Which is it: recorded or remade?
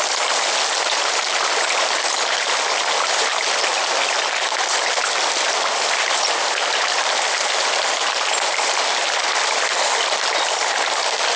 recorded